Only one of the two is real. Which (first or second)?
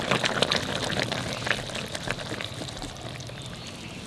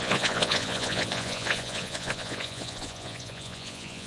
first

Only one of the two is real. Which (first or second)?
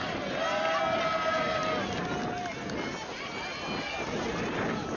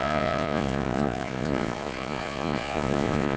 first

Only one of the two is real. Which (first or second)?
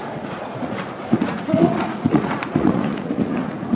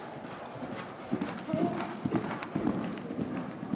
second